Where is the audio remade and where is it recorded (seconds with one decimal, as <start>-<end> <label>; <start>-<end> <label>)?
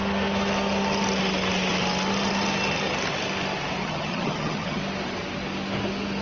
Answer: 0.0-3.8 recorded; 3.8-4.8 remade; 4.8-6.2 recorded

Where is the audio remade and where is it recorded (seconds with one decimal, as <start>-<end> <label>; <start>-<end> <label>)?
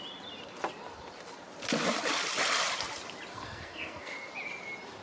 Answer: 0.0-3.3 recorded; 3.3-4.3 remade; 4.3-5.0 recorded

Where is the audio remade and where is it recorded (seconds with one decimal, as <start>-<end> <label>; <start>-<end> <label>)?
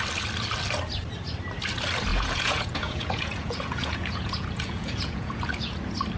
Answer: 0.0-2.1 recorded; 2.1-5.8 remade; 5.8-6.2 recorded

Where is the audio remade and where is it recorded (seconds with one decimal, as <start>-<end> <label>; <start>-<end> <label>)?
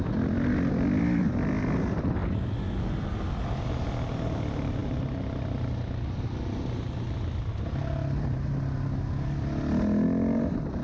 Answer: 0.0-10.8 recorded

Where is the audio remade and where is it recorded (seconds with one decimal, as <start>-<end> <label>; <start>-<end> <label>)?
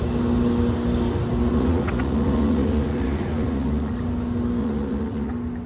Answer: 0.0-1.5 recorded; 1.5-3.9 remade; 3.9-4.6 recorded; 4.6-5.3 remade; 5.3-5.7 recorded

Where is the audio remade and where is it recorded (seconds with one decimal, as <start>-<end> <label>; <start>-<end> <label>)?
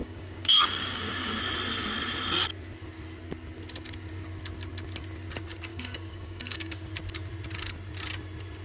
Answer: 0.0-1.4 remade; 1.4-5.7 recorded; 5.7-6.9 remade; 6.9-8.6 recorded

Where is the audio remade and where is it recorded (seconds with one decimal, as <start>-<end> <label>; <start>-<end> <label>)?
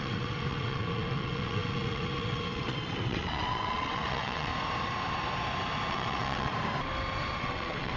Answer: 0.0-4.5 remade; 4.5-5.9 recorded; 5.9-6.5 remade; 6.5-7.4 recorded; 7.4-8.0 remade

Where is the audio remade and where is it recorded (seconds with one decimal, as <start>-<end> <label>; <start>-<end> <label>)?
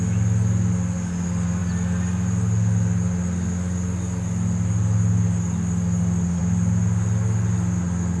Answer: 0.0-8.2 recorded